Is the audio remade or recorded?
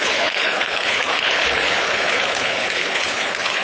remade